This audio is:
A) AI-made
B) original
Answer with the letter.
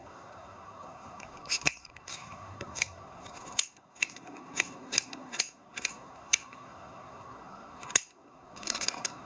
A